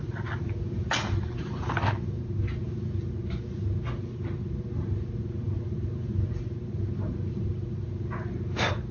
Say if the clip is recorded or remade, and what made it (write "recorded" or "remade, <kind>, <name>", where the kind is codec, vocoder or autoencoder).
recorded